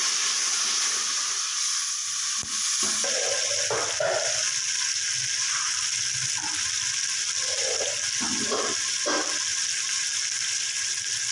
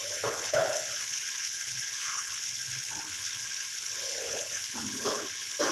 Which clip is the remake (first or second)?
second